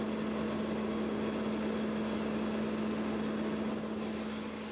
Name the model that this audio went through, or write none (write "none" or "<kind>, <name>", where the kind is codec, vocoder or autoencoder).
none